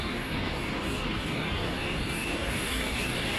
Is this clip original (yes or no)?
no